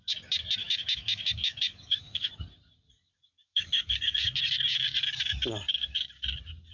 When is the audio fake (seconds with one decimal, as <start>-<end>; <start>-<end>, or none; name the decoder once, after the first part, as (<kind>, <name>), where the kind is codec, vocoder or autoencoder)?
0.6-2.3 (autoencoder, DAC-VAE); 3.4-4.4